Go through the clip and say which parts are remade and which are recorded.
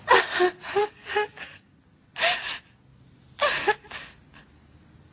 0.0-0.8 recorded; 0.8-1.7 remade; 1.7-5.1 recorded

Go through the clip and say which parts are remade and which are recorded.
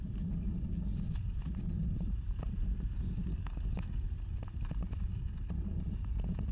0.0-3.3 recorded; 3.3-3.9 remade; 3.9-6.5 recorded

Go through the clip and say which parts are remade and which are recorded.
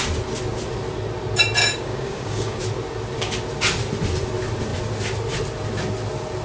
0.0-1.6 recorded; 1.6-2.6 remade; 2.6-6.4 recorded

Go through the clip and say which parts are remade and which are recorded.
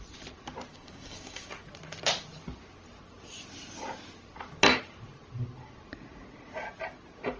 0.0-0.7 recorded; 0.7-1.5 remade; 1.5-7.4 recorded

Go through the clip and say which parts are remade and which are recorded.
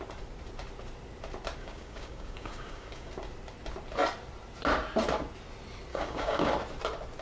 0.0-1.6 recorded; 1.6-3.1 remade; 3.1-5.9 recorded; 5.9-6.5 remade; 6.5-7.2 recorded